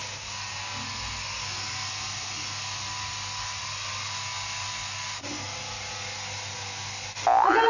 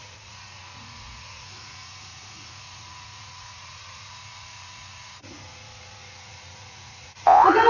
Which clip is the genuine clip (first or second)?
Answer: first